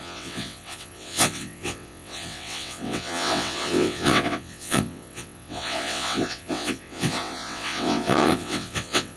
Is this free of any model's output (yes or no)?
no